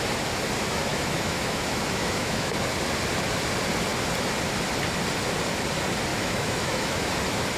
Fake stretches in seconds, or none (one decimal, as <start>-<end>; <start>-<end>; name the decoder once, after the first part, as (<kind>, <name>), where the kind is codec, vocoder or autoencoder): 0.9-2.7 (autoencoder, DAC-VAE); 6.1-7.1